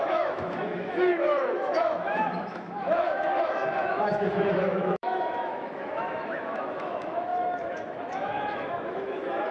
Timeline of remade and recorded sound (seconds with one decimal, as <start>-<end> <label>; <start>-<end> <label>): 0.0-9.5 remade